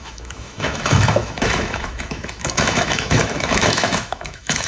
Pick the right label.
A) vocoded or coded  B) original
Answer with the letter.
A